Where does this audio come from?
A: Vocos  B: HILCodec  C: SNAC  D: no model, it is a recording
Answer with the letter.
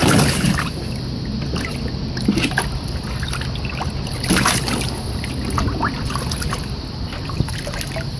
D